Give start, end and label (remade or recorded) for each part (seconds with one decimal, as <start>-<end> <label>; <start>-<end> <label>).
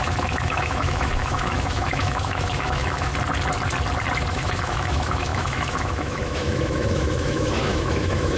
0.0-3.1 remade; 3.1-4.3 recorded; 4.3-8.4 remade